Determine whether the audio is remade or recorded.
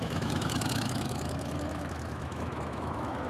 remade